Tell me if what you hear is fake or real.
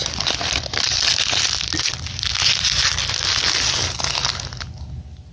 real